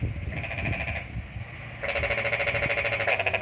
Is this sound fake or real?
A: real